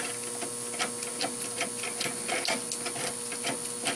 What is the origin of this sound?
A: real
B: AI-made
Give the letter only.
A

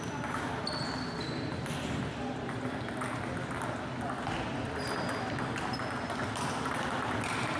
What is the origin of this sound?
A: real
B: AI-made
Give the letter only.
A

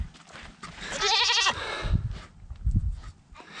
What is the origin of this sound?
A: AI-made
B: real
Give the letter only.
B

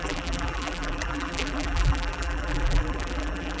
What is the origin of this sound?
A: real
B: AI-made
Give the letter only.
B